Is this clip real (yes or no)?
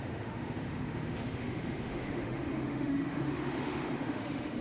no